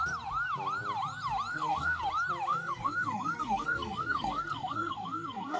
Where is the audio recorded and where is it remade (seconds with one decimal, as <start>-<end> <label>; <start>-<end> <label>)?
0.0-1.5 recorded; 1.5-2.0 remade; 2.0-2.5 recorded; 2.5-5.6 remade